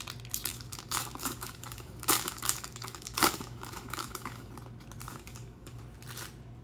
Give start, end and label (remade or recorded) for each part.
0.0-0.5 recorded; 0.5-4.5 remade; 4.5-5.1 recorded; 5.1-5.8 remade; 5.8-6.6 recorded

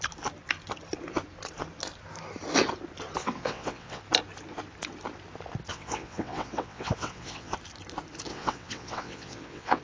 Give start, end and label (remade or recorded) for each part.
0.0-3.2 recorded; 3.2-4.0 remade; 4.0-5.7 recorded; 5.7-7.5 remade; 7.5-8.3 recorded; 8.3-9.8 remade

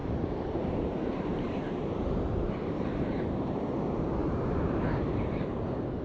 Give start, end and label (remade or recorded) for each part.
0.0-3.6 remade; 3.6-4.2 recorded; 4.2-5.0 remade; 5.0-6.0 recorded

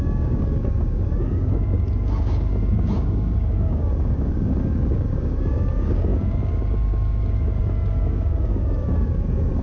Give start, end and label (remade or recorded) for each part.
0.0-9.6 remade